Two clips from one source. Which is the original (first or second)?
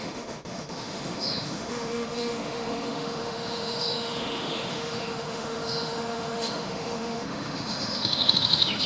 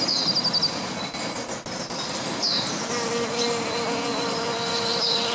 second